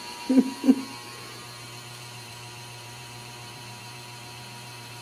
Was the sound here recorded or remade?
remade